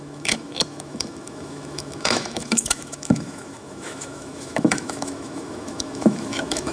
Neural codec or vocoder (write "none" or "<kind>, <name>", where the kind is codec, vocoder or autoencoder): autoencoder, DAC-VAE